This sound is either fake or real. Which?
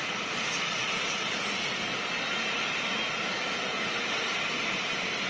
real